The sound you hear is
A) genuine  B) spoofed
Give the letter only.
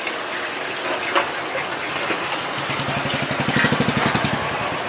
A